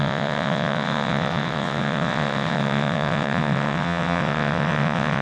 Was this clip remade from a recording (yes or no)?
yes